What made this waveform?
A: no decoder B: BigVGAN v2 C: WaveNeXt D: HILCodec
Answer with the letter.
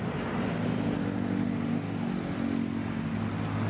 A